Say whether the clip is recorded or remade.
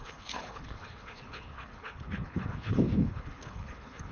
remade